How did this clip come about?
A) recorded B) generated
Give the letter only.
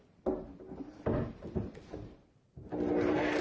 A